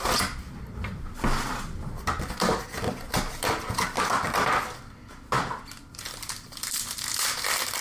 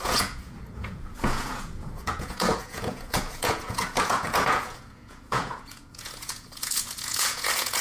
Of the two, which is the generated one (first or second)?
second